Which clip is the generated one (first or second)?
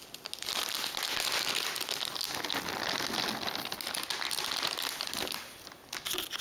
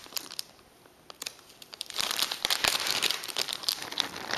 second